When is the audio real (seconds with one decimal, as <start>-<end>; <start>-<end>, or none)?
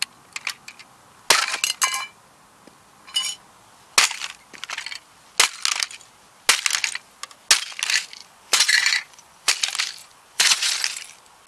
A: 0.0-8.2; 9.5-10.0; 10.7-11.5